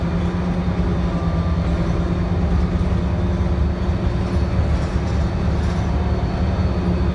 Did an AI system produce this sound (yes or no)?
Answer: no